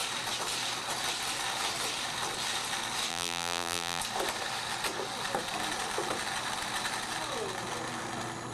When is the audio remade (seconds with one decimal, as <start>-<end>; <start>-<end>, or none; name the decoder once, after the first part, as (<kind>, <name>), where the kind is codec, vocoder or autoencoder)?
3.1-4.0 (vocoder, BigVGAN v2)